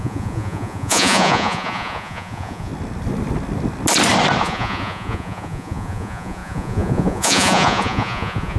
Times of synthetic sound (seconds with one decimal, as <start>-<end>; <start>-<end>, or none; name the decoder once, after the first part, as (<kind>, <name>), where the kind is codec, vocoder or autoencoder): 0.0-2.7 (vocoder, Vocos); 4.4-8.6